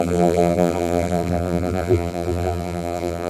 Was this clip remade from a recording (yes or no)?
yes